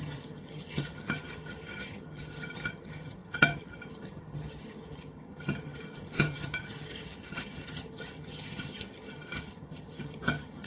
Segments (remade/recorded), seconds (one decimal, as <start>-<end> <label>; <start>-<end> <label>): 0.0-10.7 remade